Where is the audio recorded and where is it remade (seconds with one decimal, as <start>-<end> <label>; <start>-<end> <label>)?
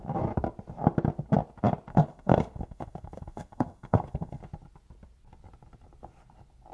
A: 0.0-1.9 recorded; 1.9-4.4 remade; 4.4-6.7 recorded